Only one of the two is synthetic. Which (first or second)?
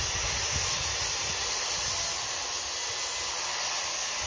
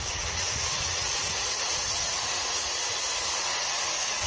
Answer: second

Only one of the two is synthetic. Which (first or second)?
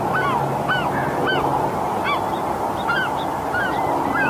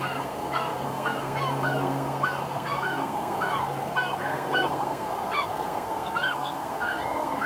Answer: second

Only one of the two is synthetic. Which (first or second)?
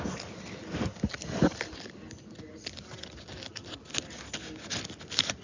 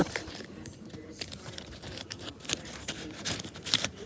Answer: second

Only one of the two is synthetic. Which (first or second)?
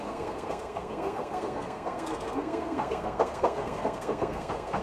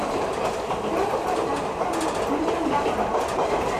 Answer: first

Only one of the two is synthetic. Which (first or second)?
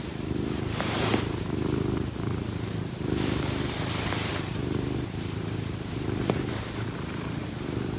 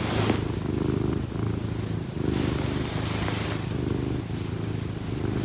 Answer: first